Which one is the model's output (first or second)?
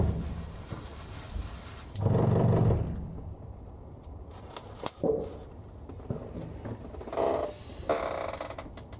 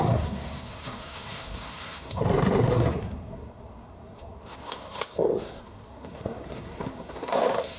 second